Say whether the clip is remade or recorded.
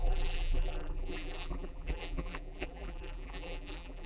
remade